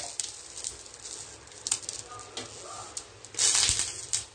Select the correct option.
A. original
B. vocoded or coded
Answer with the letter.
A